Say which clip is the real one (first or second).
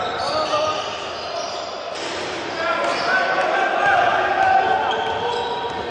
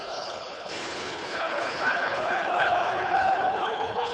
first